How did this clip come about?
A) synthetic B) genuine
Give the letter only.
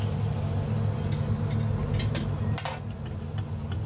B